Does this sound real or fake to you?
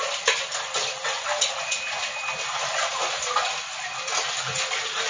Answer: real